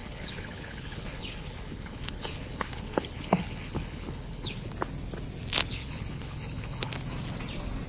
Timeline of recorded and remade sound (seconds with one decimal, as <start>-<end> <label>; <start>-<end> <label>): 0.0-4.7 remade; 4.7-5.7 recorded; 5.7-6.9 remade; 6.9-7.9 recorded